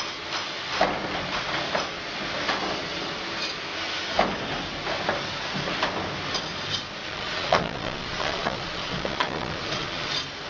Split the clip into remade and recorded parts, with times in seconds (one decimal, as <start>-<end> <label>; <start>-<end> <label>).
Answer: 0.0-7.0 recorded; 7.0-10.1 remade; 10.1-10.5 recorded